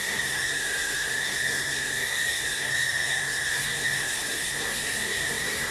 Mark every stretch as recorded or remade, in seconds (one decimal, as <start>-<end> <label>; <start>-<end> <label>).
0.0-5.7 remade